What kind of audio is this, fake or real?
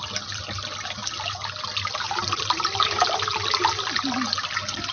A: real